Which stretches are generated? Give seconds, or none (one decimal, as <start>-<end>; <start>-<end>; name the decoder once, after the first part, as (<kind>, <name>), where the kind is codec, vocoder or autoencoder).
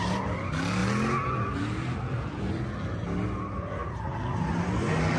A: none